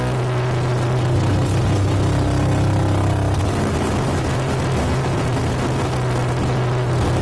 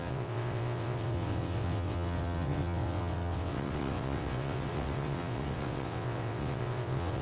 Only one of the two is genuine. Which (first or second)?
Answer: first